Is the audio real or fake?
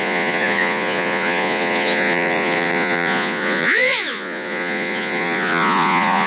fake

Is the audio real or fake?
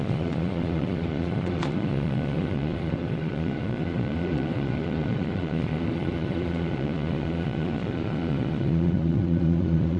fake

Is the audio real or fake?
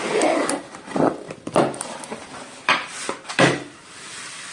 fake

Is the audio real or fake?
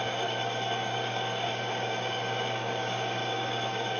fake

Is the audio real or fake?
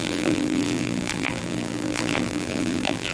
fake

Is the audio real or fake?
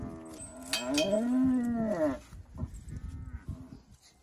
real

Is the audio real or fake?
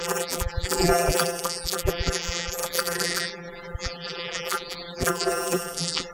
fake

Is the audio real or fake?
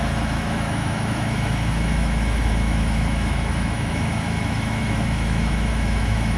fake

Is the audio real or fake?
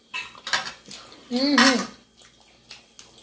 real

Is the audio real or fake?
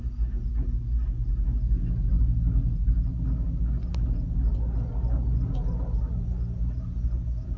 real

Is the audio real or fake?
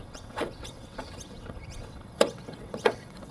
fake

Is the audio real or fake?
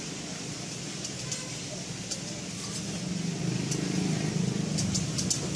real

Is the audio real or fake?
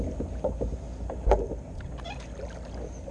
real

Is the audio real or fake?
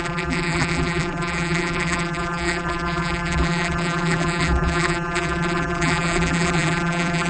fake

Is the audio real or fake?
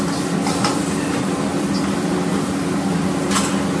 real